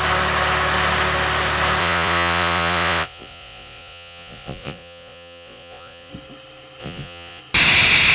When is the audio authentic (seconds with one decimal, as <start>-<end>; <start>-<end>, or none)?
0.0-1.8; 6.1-6.8; 7.4-8.1

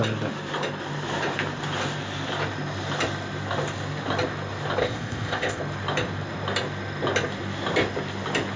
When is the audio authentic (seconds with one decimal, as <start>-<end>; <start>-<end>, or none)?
0.0-4.8; 5.6-8.6

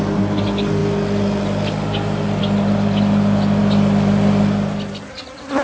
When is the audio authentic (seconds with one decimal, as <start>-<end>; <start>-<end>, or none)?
0.0-5.6

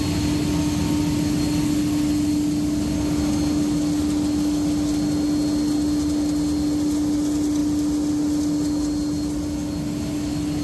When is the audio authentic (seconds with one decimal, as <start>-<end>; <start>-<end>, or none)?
0.0-10.6

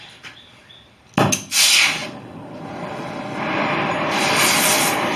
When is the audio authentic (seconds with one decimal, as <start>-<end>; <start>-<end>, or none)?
0.0-2.0